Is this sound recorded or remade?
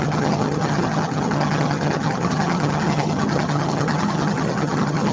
remade